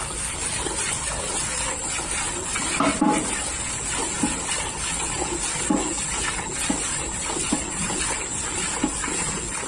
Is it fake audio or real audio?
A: real